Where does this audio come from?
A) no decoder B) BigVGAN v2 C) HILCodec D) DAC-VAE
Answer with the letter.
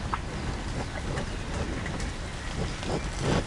A